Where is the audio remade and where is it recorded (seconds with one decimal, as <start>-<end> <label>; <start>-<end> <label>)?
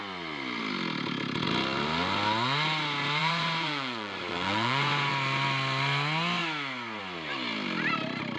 0.0-3.2 recorded; 3.2-5.1 remade; 5.1-8.4 recorded